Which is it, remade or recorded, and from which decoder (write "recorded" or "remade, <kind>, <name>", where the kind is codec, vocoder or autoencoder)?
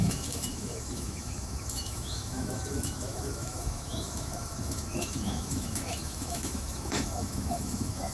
remade, autoencoder, DAC-VAE